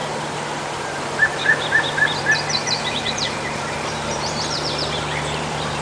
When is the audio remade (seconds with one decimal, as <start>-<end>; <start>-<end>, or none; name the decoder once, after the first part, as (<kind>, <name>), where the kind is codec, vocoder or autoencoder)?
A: 0.8-5.8 (vocoder, BigVGAN v2)